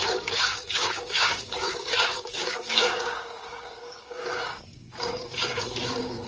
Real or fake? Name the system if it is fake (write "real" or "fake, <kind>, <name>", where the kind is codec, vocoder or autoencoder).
fake, codec, DAC